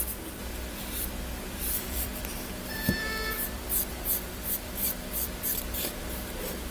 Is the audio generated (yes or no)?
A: yes